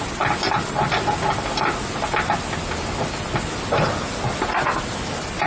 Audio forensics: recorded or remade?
recorded